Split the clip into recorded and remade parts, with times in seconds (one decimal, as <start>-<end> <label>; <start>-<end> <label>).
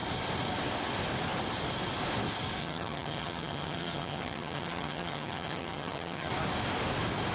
0.0-2.6 recorded; 2.6-6.3 remade; 6.3-7.3 recorded